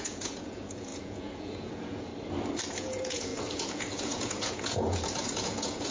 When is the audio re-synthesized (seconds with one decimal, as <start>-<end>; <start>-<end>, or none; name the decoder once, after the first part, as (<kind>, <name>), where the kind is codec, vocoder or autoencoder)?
0.0-2.1 (vocoder, Vocos); 2.7-5.9